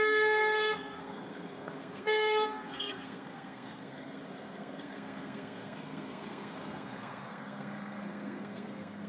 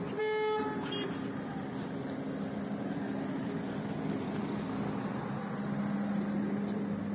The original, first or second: second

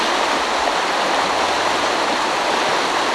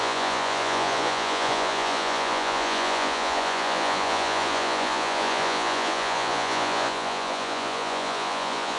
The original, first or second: first